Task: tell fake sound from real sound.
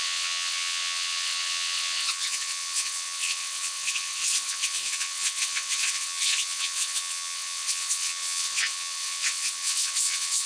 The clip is fake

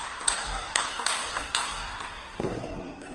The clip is fake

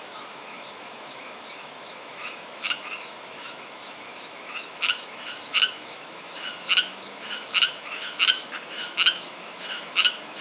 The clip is fake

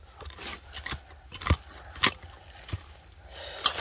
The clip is real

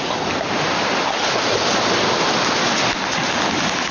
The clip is real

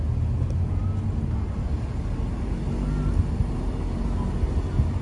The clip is real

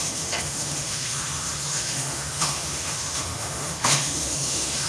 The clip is fake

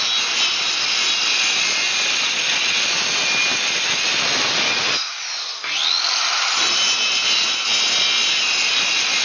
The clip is real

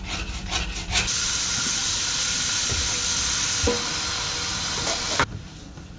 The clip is real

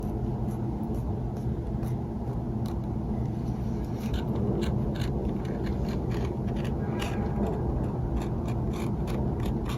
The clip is real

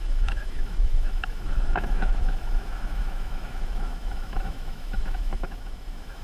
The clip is fake